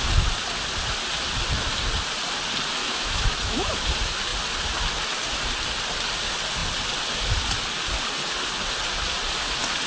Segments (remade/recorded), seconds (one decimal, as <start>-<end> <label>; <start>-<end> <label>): 0.0-2.8 recorded; 2.8-3.7 remade; 3.7-9.9 recorded